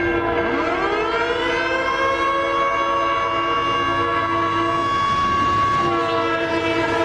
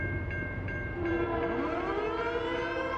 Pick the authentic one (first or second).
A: first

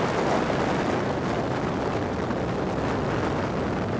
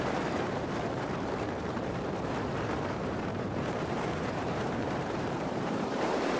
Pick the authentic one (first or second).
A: first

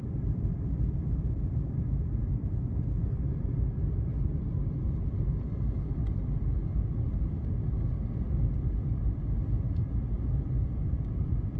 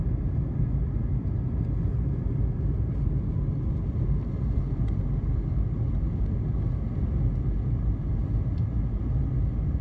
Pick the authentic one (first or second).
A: second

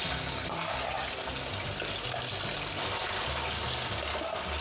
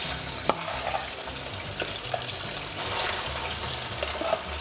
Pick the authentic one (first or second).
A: first